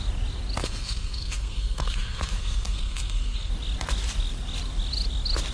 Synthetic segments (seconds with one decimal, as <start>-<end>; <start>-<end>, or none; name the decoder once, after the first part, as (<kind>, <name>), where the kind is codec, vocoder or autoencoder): 0.6-3.5 (codec, SNAC)